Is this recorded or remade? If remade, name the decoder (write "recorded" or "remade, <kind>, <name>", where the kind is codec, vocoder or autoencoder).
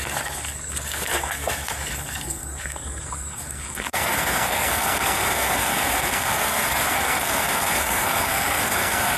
remade, codec, SNAC